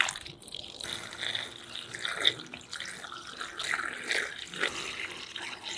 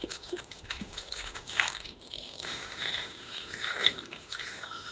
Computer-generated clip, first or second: second